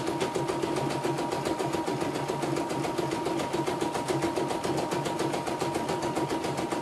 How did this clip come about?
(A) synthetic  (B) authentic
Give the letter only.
B